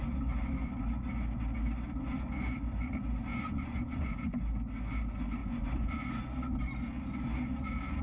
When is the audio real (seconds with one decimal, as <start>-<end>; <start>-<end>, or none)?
0.0-3.3; 4.4-5.4; 6.1-8.0